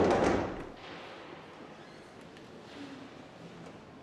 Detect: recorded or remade recorded